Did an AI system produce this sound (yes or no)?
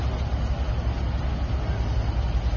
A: no